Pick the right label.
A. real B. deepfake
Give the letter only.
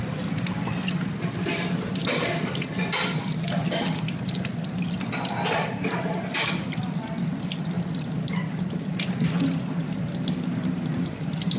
A